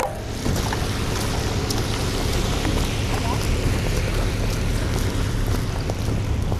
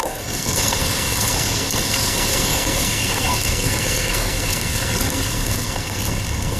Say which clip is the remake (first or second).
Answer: second